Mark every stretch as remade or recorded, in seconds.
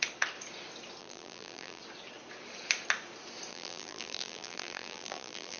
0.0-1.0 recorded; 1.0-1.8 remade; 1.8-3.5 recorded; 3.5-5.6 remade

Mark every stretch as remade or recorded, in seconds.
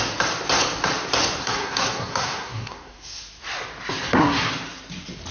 0.0-1.4 recorded; 1.4-3.2 remade; 3.2-4.0 recorded; 4.0-4.5 remade; 4.5-5.3 recorded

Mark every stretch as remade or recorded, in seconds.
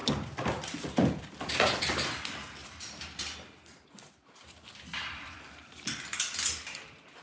0.0-2.1 remade; 2.1-2.6 recorded; 2.6-5.4 remade; 5.4-7.2 recorded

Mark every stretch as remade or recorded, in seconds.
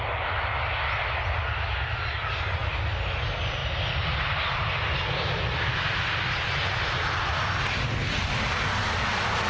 0.0-9.5 recorded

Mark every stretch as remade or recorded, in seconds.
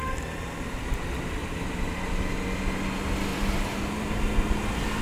0.0-1.4 recorded; 1.4-2.0 remade; 2.0-3.3 recorded; 3.3-4.2 remade; 4.2-5.0 recorded